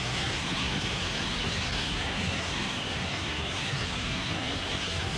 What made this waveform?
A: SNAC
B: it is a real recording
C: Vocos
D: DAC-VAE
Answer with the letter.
A